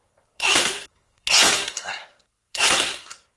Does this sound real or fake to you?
fake